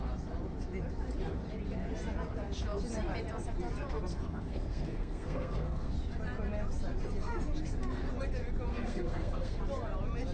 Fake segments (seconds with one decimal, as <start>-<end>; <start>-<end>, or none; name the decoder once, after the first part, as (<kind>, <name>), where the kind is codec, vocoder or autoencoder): 4.1-5.9 (codec, SNAC); 8.7-9.6